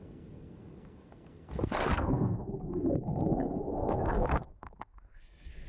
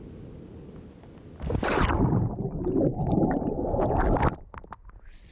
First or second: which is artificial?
first